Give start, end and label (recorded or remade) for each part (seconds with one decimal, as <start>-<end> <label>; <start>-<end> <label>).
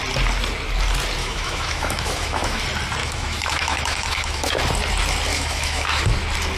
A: 0.0-1.2 recorded; 1.2-2.6 remade; 2.6-3.0 recorded; 3.0-4.6 remade; 4.6-5.3 recorded; 5.3-6.0 remade; 6.0-6.6 recorded